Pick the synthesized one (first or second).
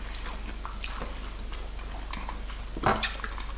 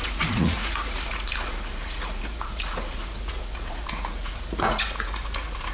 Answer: second